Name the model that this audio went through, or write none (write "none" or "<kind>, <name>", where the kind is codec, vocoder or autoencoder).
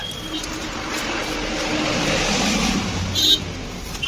none